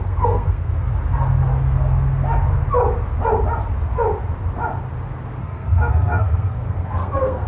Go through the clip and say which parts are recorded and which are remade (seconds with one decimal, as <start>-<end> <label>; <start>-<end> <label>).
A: 0.0-0.9 remade; 0.9-5.4 recorded; 5.4-7.5 remade